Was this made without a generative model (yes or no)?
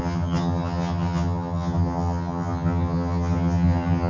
no